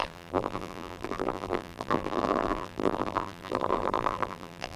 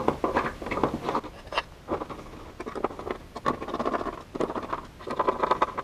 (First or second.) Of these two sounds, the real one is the second